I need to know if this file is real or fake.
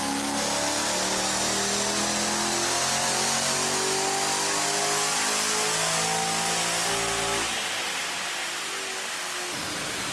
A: real